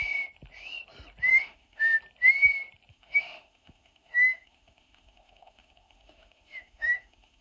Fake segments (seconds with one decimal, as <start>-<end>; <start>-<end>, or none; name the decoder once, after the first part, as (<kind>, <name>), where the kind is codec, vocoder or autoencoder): 1.3-1.8 (autoencoder, DAC-VAE); 2.9-7.4

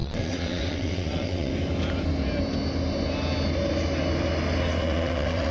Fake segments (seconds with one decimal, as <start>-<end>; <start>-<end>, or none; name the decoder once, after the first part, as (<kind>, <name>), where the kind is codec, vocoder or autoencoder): 0.0-1.5 (vocoder, WaveNeXt); 4.8-5.5

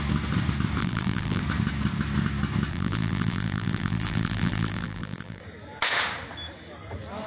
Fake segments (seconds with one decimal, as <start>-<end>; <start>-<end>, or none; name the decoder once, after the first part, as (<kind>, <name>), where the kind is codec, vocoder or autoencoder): 0.8-1.4 (vocoder, BigVGAN v2); 2.7-5.4